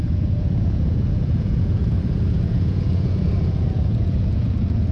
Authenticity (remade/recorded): remade